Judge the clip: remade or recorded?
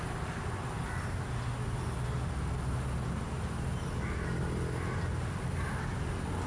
recorded